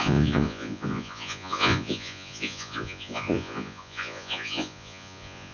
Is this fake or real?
fake